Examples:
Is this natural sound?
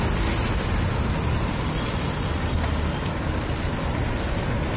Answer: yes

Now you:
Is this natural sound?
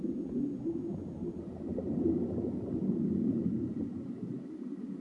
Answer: yes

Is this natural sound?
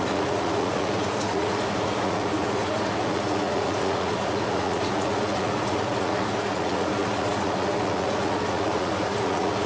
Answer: no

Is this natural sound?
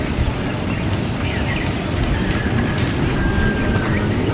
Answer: yes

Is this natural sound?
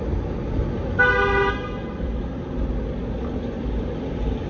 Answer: yes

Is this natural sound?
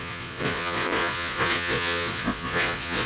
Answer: no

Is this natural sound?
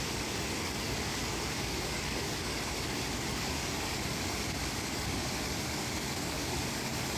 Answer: no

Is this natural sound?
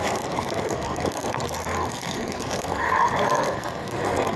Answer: no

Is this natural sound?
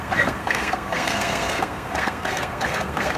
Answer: no